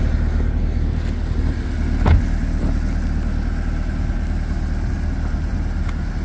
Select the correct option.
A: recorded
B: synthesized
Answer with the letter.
A